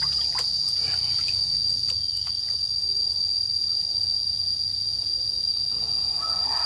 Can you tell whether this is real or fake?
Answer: real